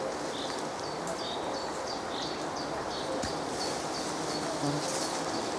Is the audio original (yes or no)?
yes